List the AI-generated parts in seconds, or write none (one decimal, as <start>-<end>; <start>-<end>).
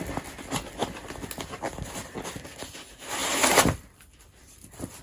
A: none